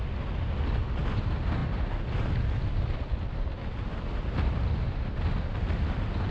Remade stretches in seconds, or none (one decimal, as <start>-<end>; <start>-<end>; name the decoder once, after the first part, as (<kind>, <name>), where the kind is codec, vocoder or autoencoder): none